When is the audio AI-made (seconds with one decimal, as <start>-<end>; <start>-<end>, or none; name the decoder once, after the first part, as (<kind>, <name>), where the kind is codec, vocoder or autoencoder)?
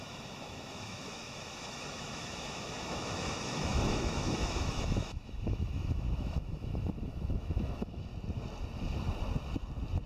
0.0-8.1 (autoencoder, DAC-VAE)